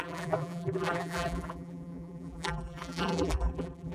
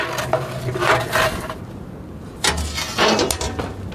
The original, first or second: second